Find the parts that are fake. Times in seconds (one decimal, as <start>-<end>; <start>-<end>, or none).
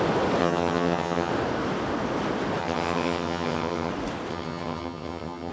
0.4-1.3; 2.6-3.9; 4.3-5.5